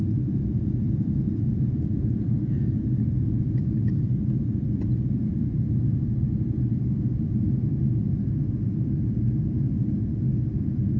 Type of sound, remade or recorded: remade